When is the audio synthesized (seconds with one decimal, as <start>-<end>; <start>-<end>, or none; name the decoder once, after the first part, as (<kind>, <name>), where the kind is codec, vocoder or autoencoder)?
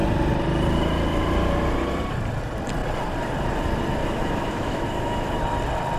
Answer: 4.0-5.4 (autoencoder, DAC-VAE)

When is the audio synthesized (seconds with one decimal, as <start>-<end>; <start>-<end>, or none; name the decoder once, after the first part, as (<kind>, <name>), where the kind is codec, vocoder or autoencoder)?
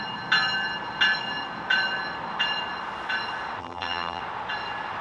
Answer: 3.6-4.2 (vocoder, BigVGAN v2)